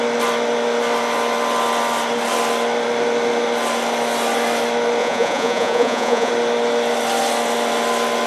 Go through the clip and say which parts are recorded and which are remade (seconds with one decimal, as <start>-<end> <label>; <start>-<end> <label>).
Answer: 0.0-5.0 recorded; 5.0-6.3 remade; 6.3-8.3 recorded